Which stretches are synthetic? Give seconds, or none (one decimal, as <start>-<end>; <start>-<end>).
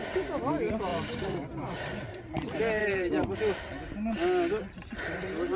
0.9-2.2; 2.8-3.6